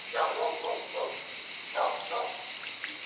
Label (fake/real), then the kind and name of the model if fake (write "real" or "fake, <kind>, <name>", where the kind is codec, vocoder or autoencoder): real